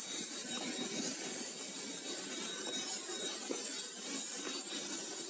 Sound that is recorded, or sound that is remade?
recorded